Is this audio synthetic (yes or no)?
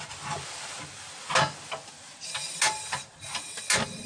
no